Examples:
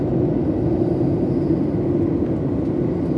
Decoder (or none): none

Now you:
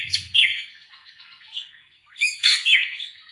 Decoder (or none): codec, SNAC